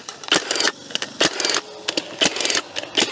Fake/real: real